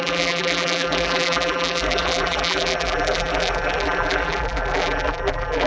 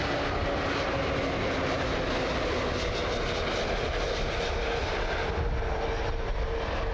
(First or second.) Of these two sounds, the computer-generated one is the first